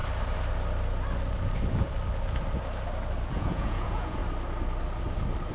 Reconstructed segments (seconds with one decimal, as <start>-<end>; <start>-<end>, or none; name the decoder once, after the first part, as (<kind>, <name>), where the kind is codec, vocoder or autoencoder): 3.3-4.2 (vocoder, Vocos)